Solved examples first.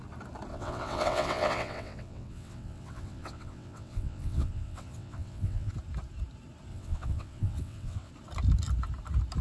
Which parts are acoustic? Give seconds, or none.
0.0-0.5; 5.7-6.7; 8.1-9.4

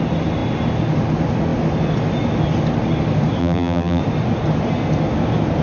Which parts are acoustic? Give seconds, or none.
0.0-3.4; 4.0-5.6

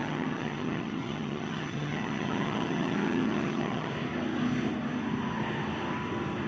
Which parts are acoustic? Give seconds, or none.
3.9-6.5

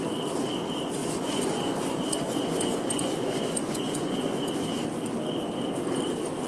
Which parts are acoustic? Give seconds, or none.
0.0-1.0; 4.4-6.5